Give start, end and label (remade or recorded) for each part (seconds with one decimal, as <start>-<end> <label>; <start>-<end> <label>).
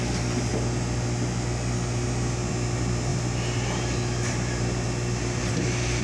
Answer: 0.0-0.5 remade; 0.5-2.5 recorded; 2.5-6.0 remade